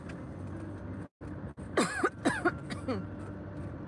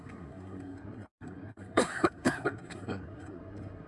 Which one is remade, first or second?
second